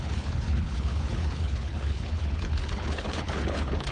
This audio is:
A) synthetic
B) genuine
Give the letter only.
A